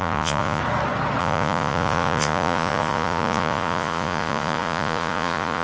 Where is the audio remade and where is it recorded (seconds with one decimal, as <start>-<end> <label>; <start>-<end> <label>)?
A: 0.0-0.6 remade; 0.6-1.2 recorded; 1.2-5.6 remade